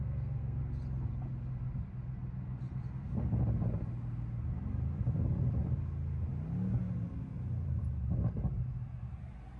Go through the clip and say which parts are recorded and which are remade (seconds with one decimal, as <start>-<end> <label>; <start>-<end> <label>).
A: 0.0-0.6 remade; 0.6-9.6 recorded